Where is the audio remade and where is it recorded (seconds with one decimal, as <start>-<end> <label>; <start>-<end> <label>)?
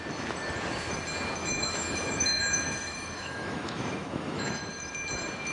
0.0-1.4 recorded; 1.4-4.7 remade; 4.7-5.5 recorded